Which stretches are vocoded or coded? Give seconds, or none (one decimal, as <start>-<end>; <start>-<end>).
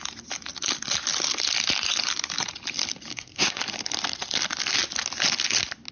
3.1-3.6